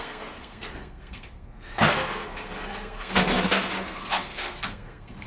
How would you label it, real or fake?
fake